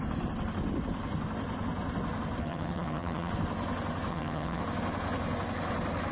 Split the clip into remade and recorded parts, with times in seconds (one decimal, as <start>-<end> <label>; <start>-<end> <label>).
0.0-2.4 recorded; 2.4-3.3 remade; 3.3-4.1 recorded; 4.1-4.6 remade; 4.6-6.1 recorded